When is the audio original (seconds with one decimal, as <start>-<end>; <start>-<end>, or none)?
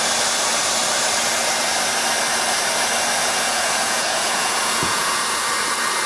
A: 0.0-3.2; 5.2-6.1